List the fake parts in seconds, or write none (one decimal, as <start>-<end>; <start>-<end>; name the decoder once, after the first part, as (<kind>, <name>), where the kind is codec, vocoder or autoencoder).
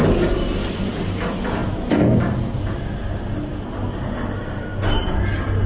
none